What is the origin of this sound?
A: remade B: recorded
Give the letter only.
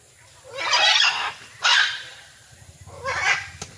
B